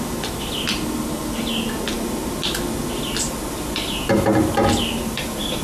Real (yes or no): yes